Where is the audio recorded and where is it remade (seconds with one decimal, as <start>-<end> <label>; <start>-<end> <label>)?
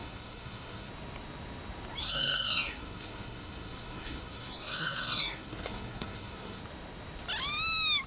0.0-0.9 remade; 0.9-2.0 recorded; 2.0-6.6 remade; 6.6-8.1 recorded